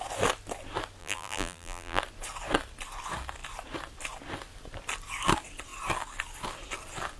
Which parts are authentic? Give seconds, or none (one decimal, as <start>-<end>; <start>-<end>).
0.0-1.0; 2.0-7.2